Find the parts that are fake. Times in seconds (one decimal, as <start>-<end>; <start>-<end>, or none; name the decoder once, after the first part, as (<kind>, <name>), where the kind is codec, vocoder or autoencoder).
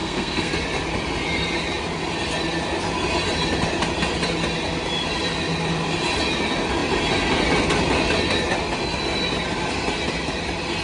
0.0-0.5 (codec, SNAC)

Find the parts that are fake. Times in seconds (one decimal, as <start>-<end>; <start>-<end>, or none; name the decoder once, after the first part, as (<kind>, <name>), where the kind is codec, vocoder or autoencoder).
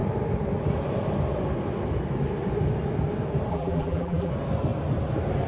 3.5-4.3 (vocoder, BigVGAN v2)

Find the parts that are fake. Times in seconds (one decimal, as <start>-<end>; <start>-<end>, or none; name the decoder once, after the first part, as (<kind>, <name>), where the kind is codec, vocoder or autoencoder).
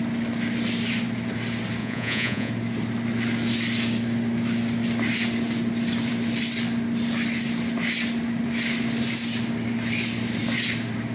1.8-2.5 (vocoder, Vocos)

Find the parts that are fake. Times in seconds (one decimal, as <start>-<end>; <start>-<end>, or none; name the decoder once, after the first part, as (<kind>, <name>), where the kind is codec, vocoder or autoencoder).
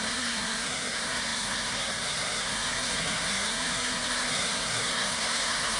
0.0-5.8 (codec, SNAC)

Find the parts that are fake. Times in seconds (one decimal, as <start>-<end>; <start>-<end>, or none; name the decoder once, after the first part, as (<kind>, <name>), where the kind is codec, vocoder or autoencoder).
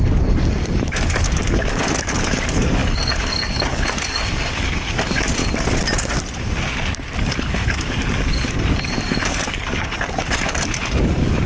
0.0-5.4 (codec, DAC); 7.2-11.5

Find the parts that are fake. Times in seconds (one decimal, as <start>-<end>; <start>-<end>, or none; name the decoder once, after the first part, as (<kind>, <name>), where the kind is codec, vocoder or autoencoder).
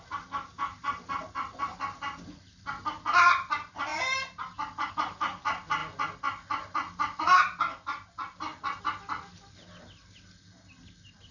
none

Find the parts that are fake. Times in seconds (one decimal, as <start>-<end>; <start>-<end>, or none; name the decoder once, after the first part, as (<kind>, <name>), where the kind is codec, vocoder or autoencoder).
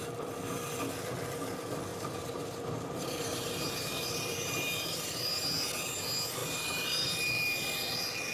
1.9-5.4 (vocoder, BigVGAN v2); 6.4-7.2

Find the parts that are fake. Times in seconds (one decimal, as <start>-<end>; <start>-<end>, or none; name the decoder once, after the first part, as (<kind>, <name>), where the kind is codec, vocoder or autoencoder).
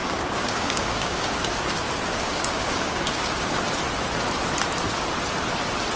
0.0-1.7 (codec, DAC); 2.1-3.6